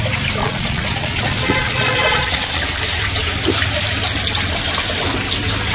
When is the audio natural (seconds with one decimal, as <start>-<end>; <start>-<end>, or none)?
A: 0.0-0.4; 2.6-5.7